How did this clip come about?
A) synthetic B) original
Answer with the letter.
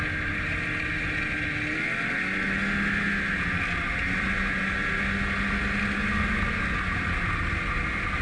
B